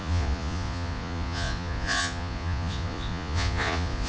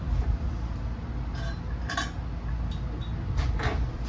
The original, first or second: second